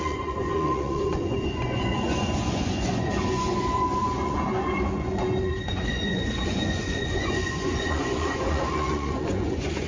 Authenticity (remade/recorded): remade